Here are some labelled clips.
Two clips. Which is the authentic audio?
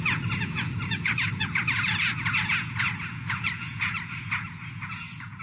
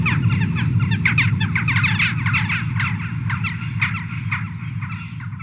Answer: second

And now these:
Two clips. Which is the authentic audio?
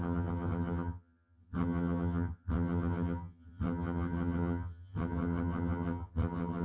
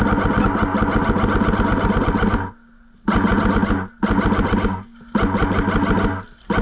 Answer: second